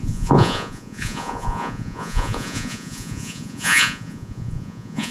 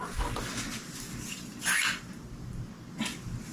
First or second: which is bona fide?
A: second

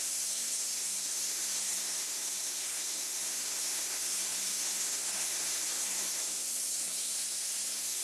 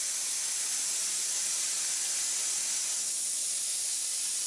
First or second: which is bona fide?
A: second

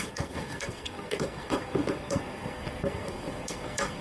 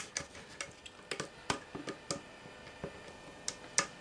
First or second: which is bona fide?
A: second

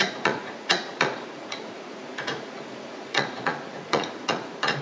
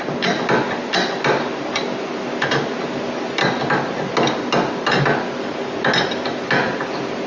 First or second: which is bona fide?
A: second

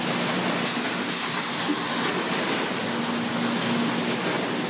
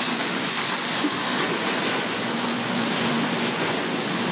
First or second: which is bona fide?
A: first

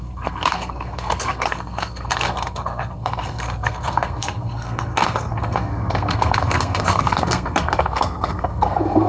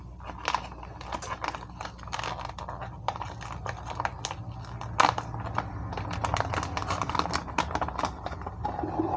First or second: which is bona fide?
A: second